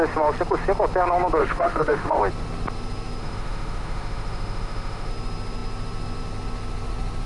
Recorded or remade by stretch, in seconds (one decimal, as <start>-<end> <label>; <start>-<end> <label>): 0.0-1.4 recorded; 1.4-2.2 remade; 2.2-3.2 recorded; 3.2-5.1 remade; 5.1-7.3 recorded